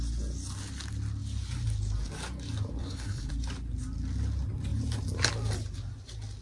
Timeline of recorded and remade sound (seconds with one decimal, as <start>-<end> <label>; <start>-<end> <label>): 0.0-2.8 recorded; 2.8-3.3 remade; 3.3-6.4 recorded